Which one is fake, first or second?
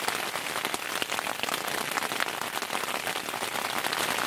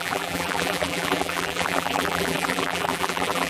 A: second